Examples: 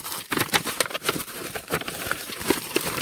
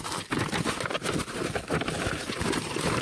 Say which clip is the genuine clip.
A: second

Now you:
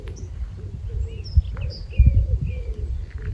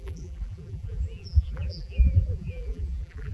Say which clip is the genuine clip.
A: first